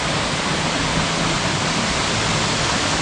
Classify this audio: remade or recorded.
recorded